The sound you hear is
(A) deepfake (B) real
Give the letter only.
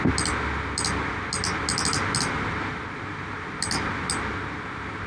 B